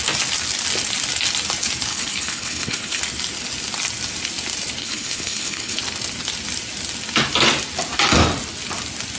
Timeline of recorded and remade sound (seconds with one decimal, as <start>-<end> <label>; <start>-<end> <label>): 0.0-1.9 recorded; 1.9-3.0 remade; 3.0-4.8 recorded; 4.8-5.8 remade; 5.8-9.2 recorded